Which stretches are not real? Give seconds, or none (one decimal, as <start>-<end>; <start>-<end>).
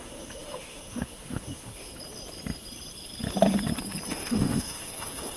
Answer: 0.0-1.9; 4.1-5.4